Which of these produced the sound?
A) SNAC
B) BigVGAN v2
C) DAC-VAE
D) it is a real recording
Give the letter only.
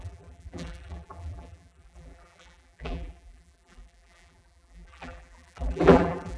B